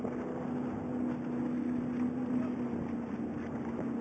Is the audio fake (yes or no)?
no